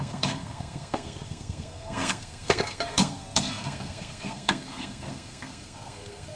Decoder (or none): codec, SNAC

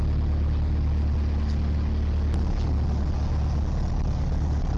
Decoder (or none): none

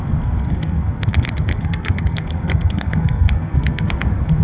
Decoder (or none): codec, SNAC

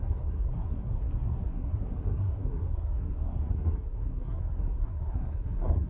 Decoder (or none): codec, SNAC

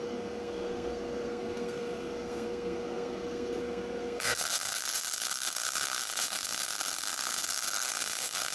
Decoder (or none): codec, SNAC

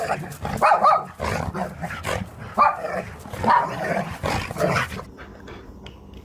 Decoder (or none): none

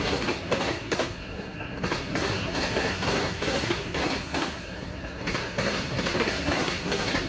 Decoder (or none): codec, SNAC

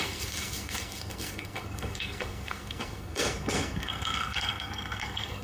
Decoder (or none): codec, SNAC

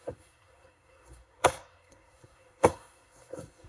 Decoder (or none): codec, SNAC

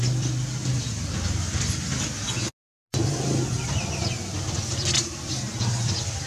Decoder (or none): none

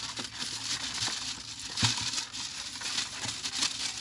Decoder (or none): none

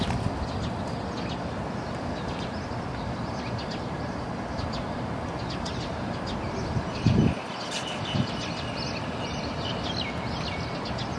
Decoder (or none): none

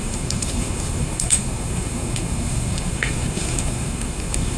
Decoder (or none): codec, SNAC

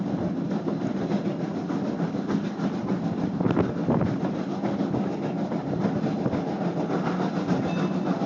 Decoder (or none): none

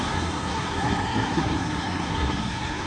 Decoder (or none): codec, SNAC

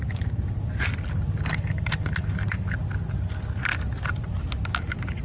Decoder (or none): none